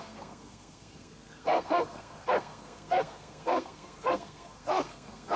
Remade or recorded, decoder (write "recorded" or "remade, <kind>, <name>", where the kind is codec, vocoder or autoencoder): remade, codec, SNAC